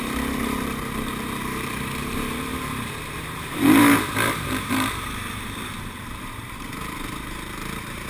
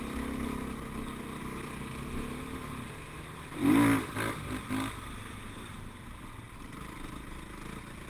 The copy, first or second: first